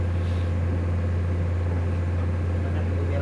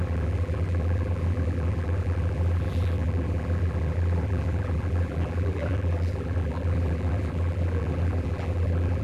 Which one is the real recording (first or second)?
first